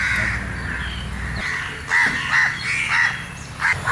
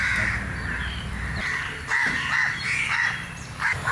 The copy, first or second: second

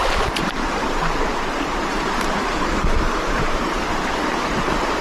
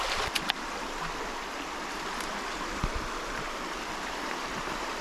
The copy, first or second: first